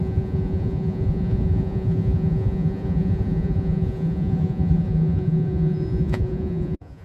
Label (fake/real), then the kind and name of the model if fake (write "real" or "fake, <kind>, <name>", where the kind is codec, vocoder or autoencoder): fake, vocoder, Vocos